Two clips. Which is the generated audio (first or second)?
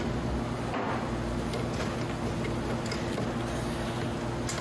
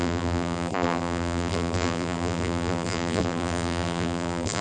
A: second